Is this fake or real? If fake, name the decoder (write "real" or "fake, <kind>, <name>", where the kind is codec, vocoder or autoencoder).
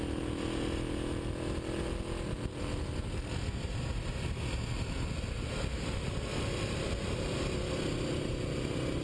real